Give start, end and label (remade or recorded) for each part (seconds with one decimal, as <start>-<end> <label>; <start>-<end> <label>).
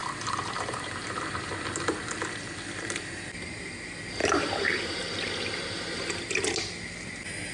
0.0-1.5 remade; 1.5-4.2 recorded; 4.2-5.0 remade; 5.0-7.5 recorded